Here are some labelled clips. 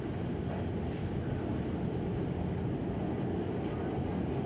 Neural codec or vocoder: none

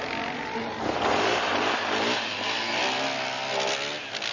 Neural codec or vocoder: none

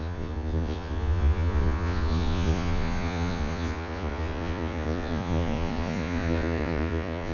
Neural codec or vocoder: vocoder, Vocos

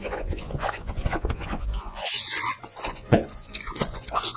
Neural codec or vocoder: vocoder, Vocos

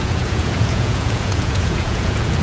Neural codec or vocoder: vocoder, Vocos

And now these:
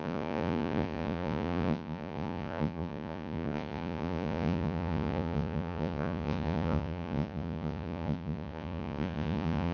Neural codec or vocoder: vocoder, Vocos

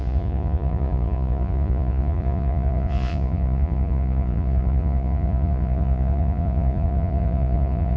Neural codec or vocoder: vocoder, Vocos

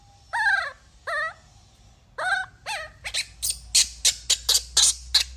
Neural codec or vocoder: none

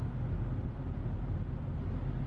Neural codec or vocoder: none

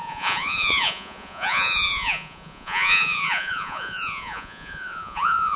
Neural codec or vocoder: vocoder, Vocos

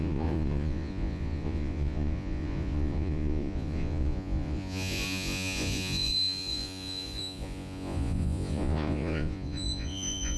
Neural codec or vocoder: vocoder, Vocos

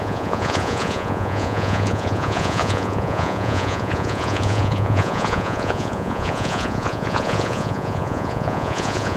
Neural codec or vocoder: vocoder, Vocos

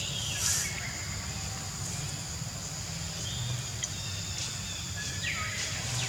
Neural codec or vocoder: none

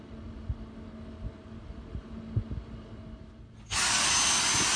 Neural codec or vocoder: none